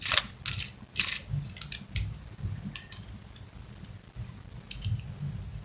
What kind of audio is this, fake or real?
real